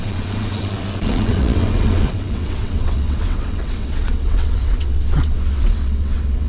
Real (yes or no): no